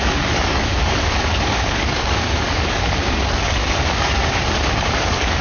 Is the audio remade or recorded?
remade